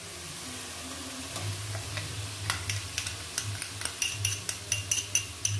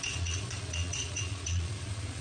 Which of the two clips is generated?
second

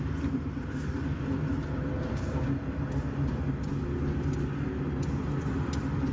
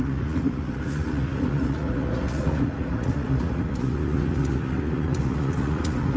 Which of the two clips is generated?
second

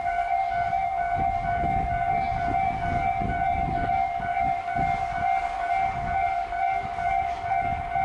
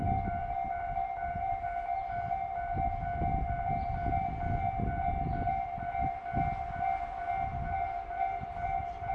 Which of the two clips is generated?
first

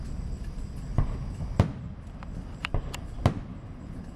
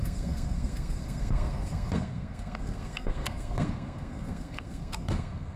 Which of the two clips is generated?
second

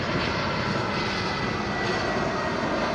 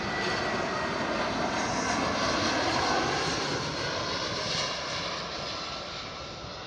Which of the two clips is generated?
second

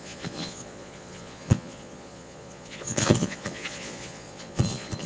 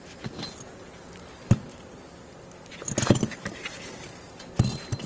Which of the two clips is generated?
first